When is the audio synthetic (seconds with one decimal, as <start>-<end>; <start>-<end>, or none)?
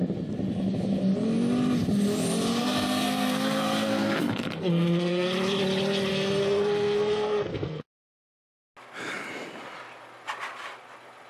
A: 2.6-5.3; 6.1-7.9